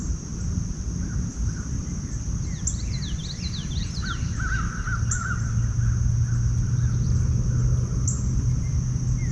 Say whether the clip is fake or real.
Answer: real